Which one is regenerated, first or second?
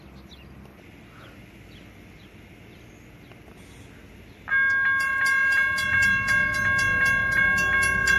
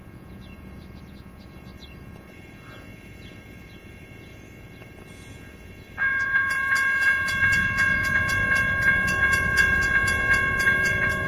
second